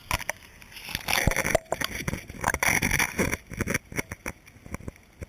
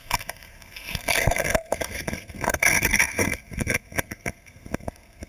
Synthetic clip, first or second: second